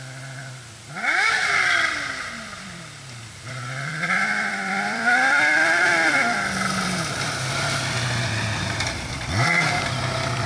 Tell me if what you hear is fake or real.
fake